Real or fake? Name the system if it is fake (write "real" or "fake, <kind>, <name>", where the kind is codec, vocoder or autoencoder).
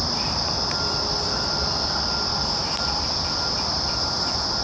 real